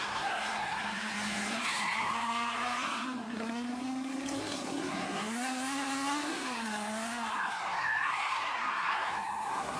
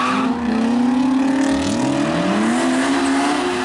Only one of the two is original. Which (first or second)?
second